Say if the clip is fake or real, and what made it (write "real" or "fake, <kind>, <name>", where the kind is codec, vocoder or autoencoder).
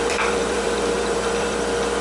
fake, vocoder, BigVGAN v2